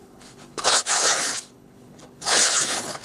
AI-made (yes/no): yes